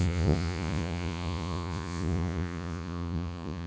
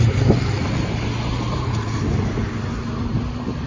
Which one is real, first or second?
second